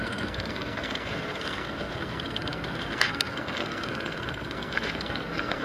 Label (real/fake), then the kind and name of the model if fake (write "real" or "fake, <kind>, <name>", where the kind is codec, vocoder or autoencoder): fake, codec, SNAC